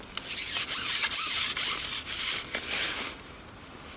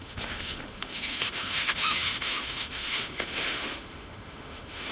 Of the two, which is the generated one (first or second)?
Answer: second